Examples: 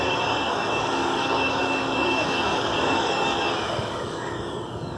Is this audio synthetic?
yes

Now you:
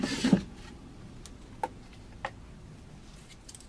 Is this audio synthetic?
no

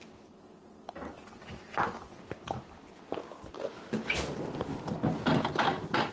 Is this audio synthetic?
no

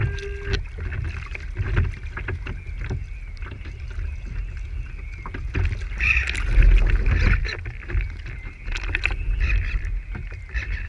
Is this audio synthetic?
no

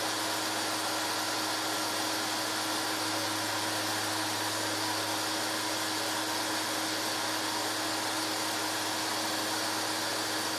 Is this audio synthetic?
no